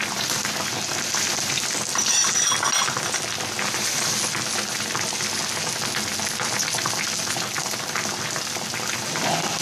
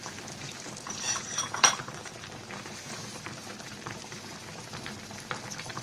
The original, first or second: first